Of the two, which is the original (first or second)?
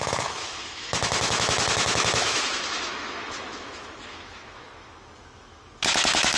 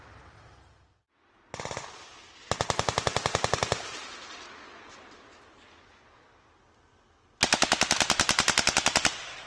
second